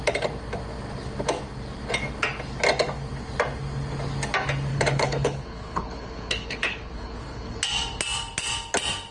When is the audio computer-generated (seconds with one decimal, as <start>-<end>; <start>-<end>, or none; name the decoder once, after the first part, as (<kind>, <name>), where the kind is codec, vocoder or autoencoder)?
4.7-7.6 (codec, HILCodec)